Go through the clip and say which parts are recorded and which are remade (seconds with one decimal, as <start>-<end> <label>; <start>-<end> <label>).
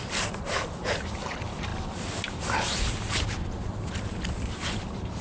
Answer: 0.0-1.7 remade; 1.7-4.8 recorded; 4.8-5.2 remade